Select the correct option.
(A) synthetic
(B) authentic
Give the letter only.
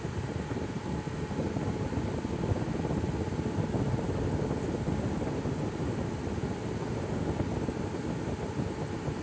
B